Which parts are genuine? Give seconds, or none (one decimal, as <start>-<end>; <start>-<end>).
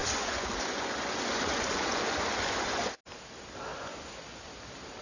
3.0-3.7; 4.5-5.0